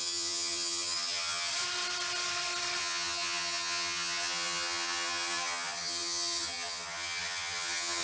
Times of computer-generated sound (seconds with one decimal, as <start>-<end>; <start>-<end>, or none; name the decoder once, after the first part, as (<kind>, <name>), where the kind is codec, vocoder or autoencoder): 0.0-1.5 (vocoder, HiFi-GAN); 2.8-8.0